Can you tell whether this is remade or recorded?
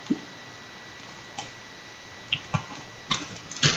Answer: recorded